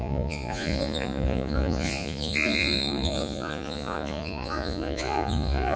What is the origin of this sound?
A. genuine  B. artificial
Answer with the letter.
B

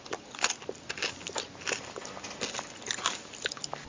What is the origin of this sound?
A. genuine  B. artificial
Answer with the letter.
A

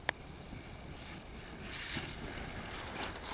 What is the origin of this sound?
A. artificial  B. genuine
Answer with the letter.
B